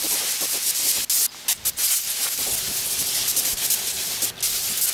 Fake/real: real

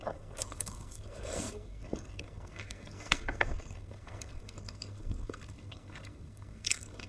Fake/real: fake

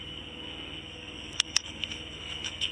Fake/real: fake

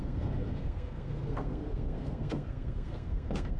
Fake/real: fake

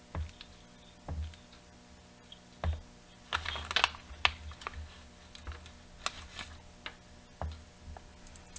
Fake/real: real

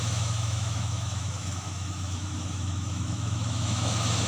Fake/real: fake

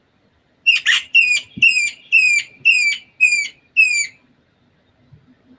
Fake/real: real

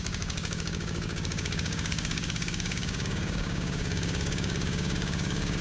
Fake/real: fake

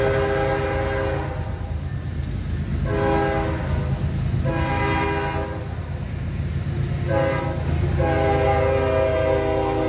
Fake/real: real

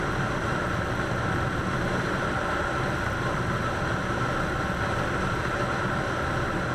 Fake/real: real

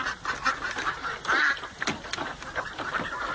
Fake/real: real